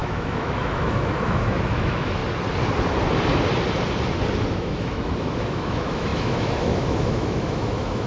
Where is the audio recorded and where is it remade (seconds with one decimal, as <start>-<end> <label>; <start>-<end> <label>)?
0.0-2.2 remade; 2.2-4.5 recorded; 4.5-8.1 remade